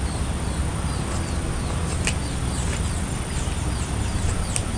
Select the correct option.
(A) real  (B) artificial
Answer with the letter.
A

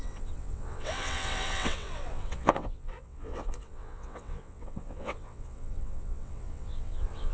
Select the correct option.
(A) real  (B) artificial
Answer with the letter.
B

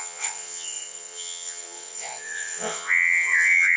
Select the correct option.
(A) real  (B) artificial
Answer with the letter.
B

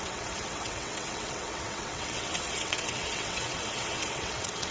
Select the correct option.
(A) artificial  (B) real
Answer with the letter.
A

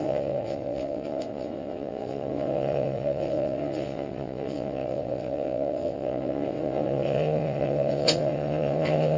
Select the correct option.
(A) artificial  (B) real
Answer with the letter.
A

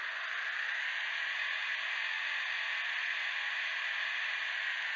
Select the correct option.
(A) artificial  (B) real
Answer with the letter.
B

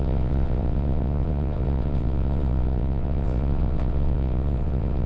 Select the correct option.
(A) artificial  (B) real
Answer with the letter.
A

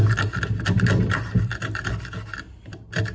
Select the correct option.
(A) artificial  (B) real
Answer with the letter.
B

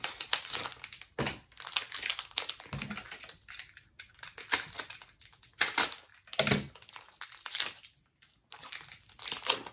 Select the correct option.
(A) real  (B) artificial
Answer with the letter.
A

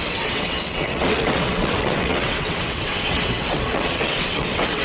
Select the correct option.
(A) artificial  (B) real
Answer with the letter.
A